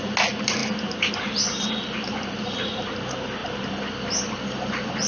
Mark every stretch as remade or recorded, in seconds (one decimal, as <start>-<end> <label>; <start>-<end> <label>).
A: 0.0-5.1 recorded